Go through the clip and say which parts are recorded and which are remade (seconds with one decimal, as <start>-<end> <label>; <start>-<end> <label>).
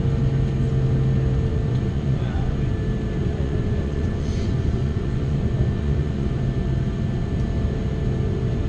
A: 0.0-1.5 recorded; 1.5-2.7 remade; 2.7-3.2 recorded; 3.2-6.4 remade; 6.4-8.7 recorded